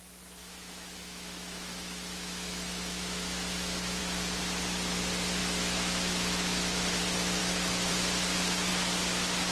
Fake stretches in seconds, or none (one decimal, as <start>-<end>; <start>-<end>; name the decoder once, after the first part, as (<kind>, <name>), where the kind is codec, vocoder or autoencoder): 0.4-4.0 (autoencoder, DAC-VAE); 5.4-7.0; 7.4-7.9

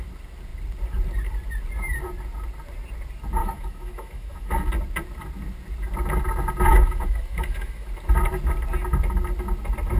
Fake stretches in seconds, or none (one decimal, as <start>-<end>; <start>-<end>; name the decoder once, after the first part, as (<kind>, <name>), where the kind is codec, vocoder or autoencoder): 3.4-4.5 (autoencoder, DAC-VAE); 6.7-7.9

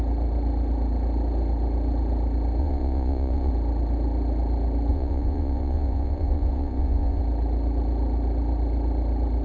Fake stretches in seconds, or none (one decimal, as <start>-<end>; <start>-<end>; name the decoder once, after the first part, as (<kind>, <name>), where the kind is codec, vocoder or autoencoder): 2.6-3.5 (vocoder, Vocos); 4.9-7.2